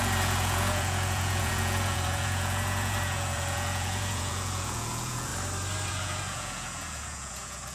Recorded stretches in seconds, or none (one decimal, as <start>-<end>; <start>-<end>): 5.3-5.9